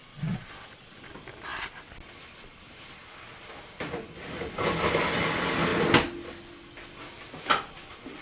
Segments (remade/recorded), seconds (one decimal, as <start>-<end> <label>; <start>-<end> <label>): 0.0-1.1 remade; 1.1-8.2 recorded